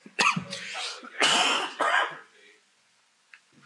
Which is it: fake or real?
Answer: fake